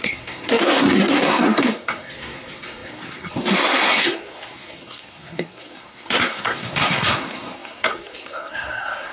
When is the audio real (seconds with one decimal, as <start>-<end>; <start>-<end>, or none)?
none